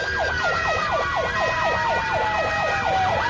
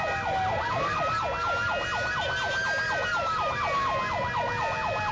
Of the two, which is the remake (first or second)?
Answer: first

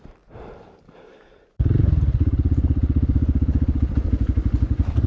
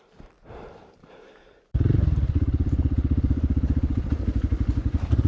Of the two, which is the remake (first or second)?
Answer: second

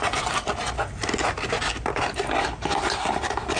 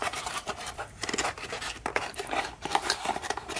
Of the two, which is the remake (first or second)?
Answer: second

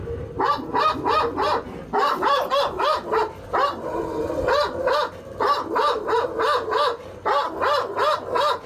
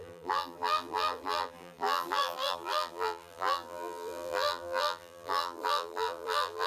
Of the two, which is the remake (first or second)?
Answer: second